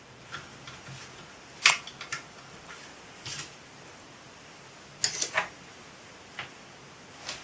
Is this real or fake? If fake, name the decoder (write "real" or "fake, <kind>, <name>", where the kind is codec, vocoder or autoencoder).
real